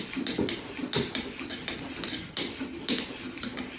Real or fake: real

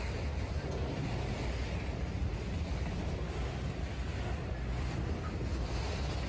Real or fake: real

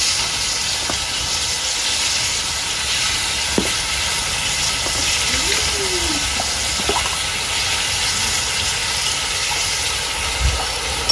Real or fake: real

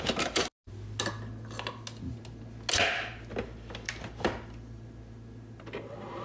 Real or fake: real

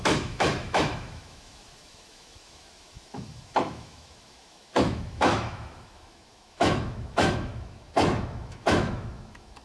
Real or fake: fake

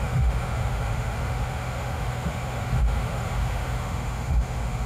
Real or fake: fake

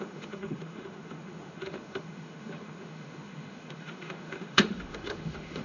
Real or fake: fake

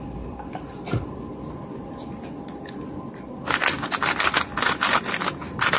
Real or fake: real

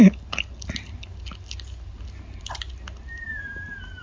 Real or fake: real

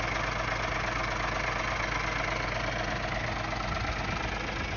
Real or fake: real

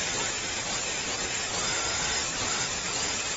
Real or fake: real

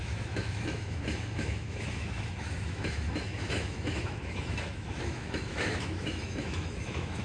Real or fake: fake